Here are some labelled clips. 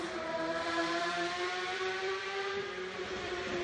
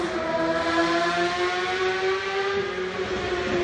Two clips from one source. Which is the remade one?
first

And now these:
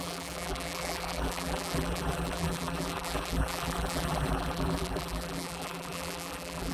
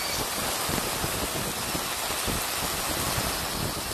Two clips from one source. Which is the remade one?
first